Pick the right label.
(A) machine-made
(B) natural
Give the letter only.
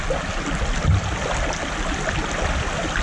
B